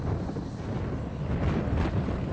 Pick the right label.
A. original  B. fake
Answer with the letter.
A